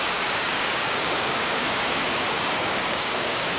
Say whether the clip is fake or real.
fake